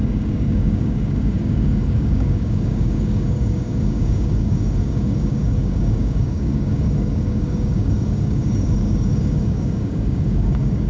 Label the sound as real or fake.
fake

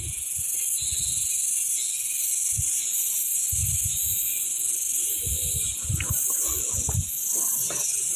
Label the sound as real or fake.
real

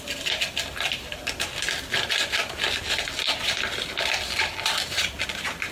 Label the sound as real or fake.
real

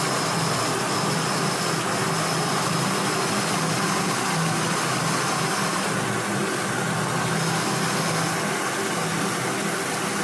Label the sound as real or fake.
real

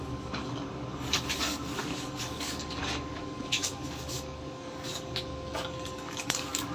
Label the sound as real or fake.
fake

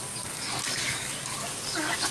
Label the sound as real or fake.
fake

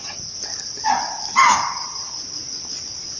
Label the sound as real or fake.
real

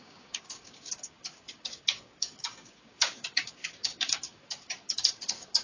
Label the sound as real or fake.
fake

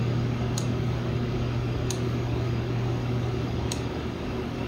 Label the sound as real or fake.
fake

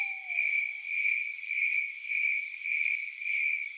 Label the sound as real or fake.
fake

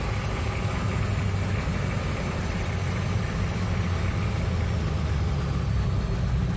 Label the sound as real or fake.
real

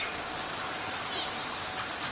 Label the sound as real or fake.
real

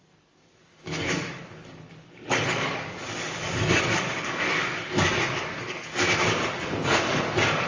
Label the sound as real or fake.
fake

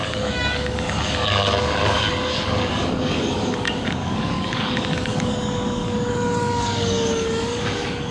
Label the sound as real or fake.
fake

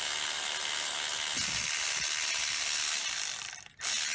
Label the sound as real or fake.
real